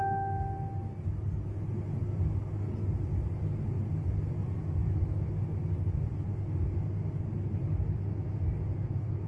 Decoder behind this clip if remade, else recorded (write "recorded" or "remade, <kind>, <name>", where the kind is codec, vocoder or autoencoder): recorded